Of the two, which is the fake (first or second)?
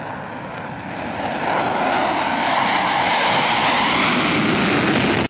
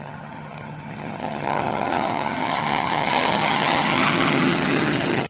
second